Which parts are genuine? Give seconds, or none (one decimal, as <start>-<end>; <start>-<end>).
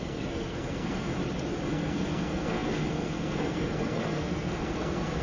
1.1-1.7